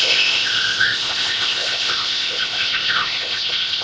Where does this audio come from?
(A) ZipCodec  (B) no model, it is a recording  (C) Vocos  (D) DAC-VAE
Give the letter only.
A